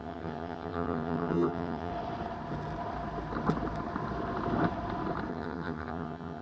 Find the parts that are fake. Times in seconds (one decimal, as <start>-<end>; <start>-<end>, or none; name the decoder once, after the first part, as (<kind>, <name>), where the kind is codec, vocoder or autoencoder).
0.0-1.9 (vocoder, HiFi-GAN); 5.3-6.4

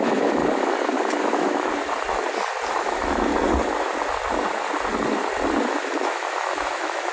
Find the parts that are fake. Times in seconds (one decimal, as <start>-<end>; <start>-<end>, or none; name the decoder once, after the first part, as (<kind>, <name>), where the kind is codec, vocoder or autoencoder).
0.0-0.4 (autoencoder, DAC-VAE); 1.2-1.7; 2.7-3.3; 5.6-7.1

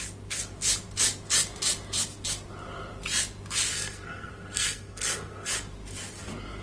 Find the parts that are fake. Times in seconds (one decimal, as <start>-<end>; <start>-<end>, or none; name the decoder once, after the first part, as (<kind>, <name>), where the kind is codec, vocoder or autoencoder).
3.7-5.5 (codec, SNAC)

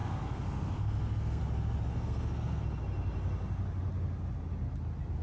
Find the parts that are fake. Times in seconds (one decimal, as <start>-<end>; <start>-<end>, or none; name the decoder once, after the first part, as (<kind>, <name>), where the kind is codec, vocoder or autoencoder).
0.0-1.4 (codec, SNAC); 1.9-2.6

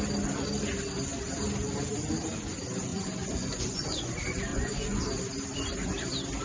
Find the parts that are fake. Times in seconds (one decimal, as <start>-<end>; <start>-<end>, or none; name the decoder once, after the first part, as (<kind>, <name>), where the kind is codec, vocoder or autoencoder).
2.9-4.1 (vocoder, Vocos); 4.5-5.0

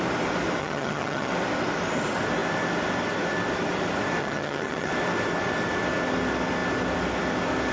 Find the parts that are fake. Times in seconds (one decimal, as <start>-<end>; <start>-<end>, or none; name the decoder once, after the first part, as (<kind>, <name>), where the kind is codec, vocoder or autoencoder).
0.6-1.3 (vocoder, HiFi-GAN); 4.2-4.9

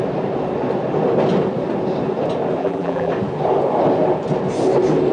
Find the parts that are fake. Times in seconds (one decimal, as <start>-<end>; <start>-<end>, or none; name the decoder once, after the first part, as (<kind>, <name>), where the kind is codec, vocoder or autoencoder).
2.6-3.1 (vocoder, BigVGAN v2)